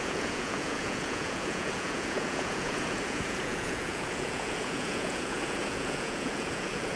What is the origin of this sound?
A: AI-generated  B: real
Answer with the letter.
A